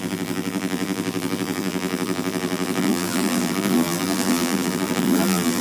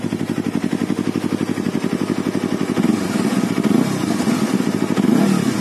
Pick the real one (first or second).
second